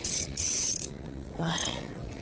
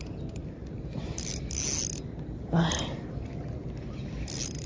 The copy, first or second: first